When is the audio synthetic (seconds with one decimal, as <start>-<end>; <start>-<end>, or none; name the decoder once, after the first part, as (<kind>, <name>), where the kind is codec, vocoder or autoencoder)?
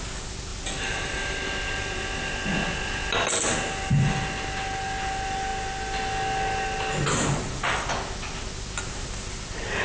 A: none